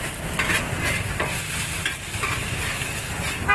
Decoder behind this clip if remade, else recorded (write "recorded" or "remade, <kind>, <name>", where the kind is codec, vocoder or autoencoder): recorded